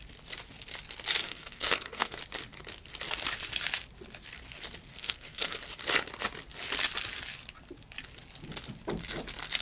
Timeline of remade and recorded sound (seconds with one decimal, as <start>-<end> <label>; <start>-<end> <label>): 0.0-1.2 recorded; 1.2-2.2 remade; 2.2-4.9 recorded; 4.9-5.6 remade; 5.6-9.6 recorded